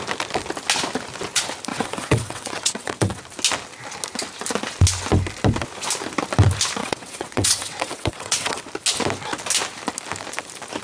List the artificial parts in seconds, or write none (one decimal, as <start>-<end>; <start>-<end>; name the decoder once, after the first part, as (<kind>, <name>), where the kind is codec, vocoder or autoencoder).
1.7-3.2 (vocoder, WaveNeXt); 6.8-8.6